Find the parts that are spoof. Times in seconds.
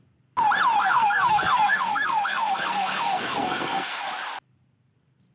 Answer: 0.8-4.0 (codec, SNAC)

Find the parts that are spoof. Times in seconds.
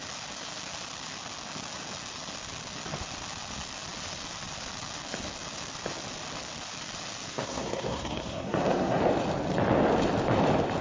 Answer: 7.3-9.0 (codec, SNAC)